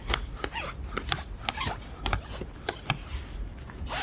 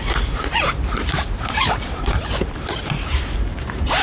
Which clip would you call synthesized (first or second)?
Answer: second